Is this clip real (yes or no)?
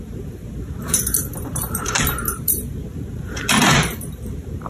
no